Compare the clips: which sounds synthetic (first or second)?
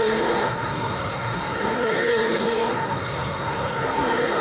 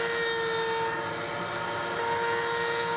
first